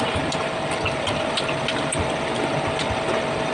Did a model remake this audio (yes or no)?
no